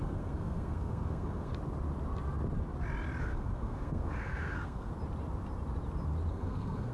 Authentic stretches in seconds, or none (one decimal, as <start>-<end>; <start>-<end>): 1.5-3.2; 4.9-6.3